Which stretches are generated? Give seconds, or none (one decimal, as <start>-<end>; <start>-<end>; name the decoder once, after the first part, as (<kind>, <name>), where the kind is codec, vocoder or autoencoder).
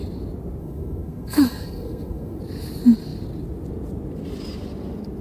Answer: 0.6-2.4 (codec, SNAC)